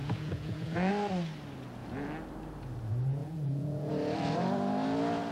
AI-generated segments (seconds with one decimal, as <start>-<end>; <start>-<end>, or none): 0.0-0.9; 3.2-3.9